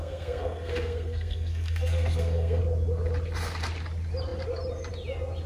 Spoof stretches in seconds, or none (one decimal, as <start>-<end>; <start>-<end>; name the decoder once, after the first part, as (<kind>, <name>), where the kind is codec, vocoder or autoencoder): 0.0-2.6 (codec, SNAC)